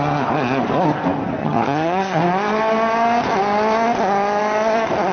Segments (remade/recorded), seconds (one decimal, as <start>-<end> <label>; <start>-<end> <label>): 0.0-1.4 recorded; 1.4-2.2 remade; 2.2-5.1 recorded